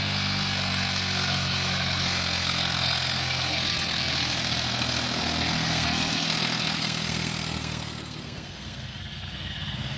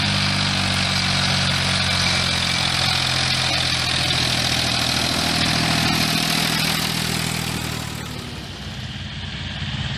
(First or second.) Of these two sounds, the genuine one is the second